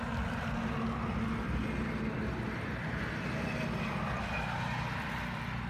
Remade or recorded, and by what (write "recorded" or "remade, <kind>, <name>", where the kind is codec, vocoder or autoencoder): recorded